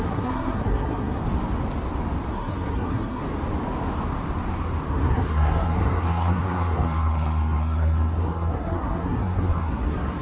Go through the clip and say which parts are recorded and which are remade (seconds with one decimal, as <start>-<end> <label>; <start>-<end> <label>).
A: 0.0-1.2 remade; 1.2-2.3 recorded; 2.3-3.2 remade; 3.2-4.9 recorded; 4.9-10.2 remade